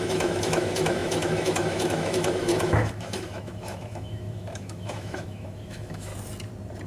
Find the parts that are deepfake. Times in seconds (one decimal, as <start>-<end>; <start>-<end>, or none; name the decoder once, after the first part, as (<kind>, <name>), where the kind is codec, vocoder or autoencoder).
0.0-6.1 (autoencoder, DAC-VAE)